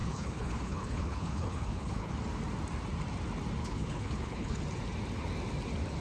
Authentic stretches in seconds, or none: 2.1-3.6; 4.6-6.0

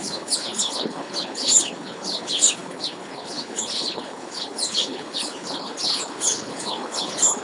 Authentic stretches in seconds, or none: none

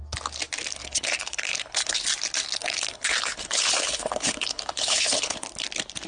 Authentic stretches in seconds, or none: 0.0-0.8; 2.0-2.6; 5.5-6.1

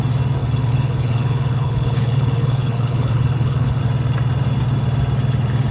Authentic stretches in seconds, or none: 0.0-0.4; 3.8-5.7